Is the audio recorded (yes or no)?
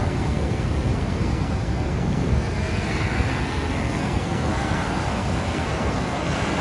no